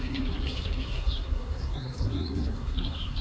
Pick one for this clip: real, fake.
fake